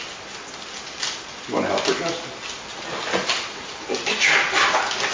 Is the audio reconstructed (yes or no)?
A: no